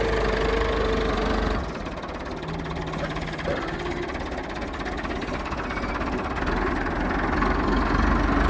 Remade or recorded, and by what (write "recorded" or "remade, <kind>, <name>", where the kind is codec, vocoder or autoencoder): recorded